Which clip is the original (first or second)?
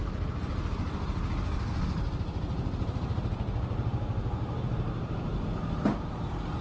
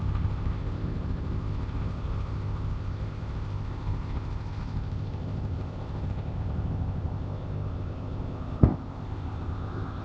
first